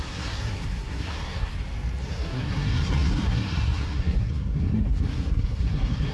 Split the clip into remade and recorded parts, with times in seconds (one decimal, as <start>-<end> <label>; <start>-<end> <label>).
0.0-1.5 remade; 1.5-2.0 recorded; 2.0-6.1 remade